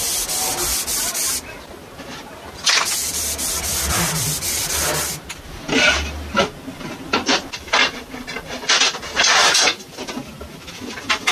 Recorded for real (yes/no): yes